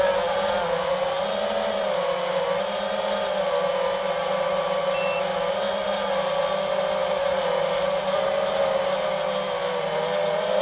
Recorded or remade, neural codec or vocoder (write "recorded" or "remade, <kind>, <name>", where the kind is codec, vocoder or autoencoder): recorded